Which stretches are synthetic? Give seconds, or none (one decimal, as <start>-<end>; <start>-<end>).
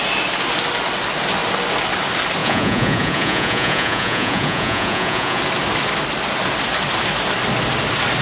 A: 2.4-5.4